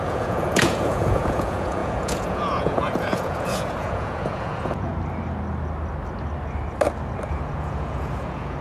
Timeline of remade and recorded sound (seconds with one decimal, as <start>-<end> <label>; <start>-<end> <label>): 0.0-4.9 remade; 4.9-7.3 recorded; 7.3-8.6 remade